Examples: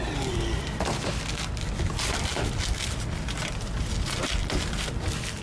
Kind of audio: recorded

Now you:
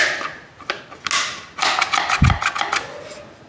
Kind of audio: recorded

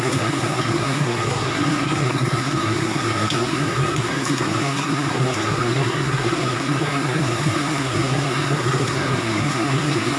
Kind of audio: remade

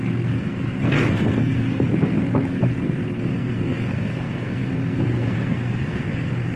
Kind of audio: remade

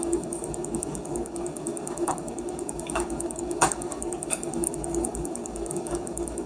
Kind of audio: remade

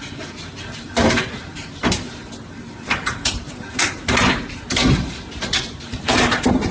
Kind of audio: remade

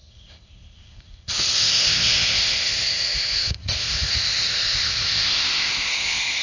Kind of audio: remade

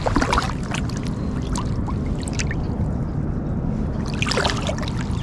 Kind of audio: recorded